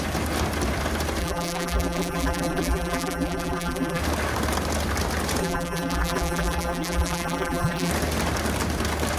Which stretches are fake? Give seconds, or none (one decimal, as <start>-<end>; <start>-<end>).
1.2-4.0; 5.4-7.9